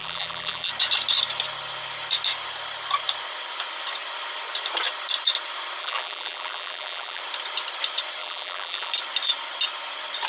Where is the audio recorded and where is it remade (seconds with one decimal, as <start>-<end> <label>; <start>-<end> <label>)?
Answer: 0.0-0.7 remade; 0.7-5.8 recorded; 5.8-7.2 remade; 7.2-8.2 recorded; 8.2-8.9 remade; 8.9-10.3 recorded